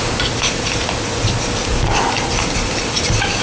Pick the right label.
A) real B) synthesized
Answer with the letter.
A